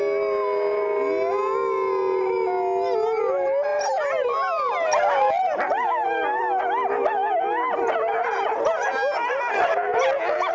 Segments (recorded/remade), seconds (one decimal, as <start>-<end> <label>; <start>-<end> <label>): 0.0-10.5 recorded